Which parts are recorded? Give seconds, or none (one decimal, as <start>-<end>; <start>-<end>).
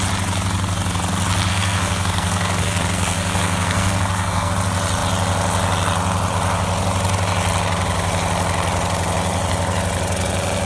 0.0-1.5; 4.5-10.7